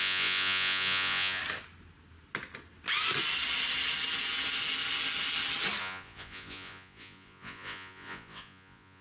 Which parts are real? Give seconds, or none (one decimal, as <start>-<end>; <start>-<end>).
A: 1.4-5.8